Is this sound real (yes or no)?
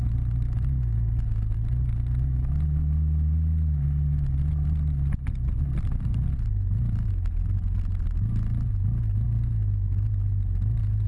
yes